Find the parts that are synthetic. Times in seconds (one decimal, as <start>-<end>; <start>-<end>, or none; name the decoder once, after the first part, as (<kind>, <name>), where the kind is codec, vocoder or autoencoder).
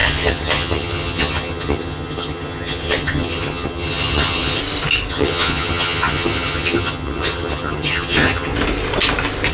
0.0-4.6 (vocoder, HiFi-GAN); 5.1-8.5